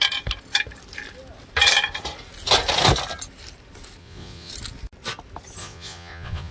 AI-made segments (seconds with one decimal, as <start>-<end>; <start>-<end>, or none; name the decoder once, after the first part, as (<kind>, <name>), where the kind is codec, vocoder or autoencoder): 4.0-4.5 (vocoder, Vocos); 5.6-6.5